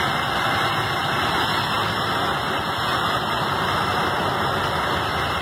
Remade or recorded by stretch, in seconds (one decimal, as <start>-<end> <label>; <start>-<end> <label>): 0.0-5.4 recorded